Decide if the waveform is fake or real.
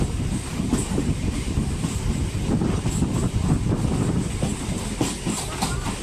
real